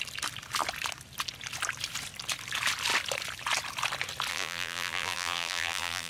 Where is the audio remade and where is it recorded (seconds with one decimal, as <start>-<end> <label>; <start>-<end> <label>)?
0.0-4.3 recorded; 4.3-6.1 remade